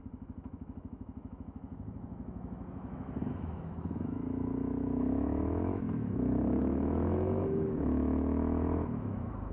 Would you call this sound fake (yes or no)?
yes